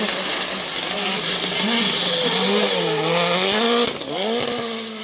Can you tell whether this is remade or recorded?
recorded